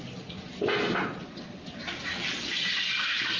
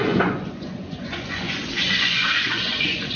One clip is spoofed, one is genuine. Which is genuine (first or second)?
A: first